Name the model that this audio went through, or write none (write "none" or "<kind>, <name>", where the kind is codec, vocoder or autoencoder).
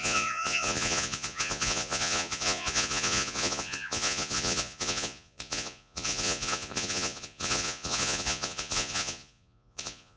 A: vocoder, Vocos